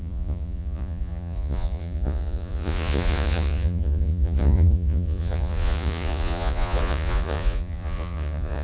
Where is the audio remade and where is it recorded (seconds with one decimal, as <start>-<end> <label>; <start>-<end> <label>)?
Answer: 0.0-8.6 remade